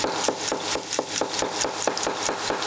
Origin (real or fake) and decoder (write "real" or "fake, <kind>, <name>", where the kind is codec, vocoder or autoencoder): real